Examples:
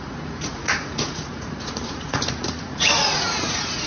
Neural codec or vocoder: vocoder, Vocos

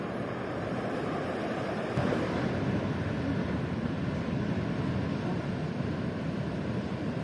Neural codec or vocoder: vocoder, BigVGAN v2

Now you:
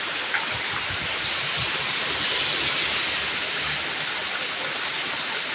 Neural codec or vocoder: none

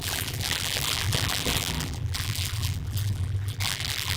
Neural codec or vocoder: vocoder, BigVGAN v2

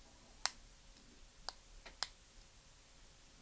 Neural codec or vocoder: none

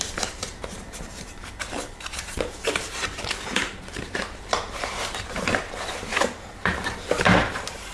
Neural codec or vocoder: vocoder, BigVGAN v2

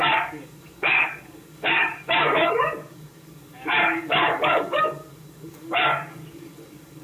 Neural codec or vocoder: codec, DAC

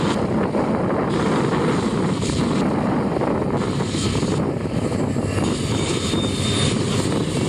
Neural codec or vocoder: none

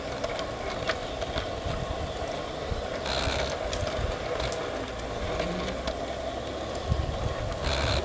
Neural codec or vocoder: none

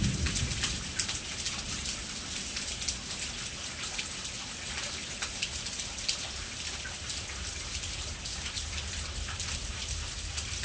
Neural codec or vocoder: none